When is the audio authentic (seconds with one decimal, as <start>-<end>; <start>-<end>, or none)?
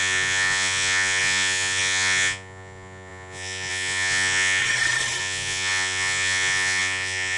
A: 4.6-5.2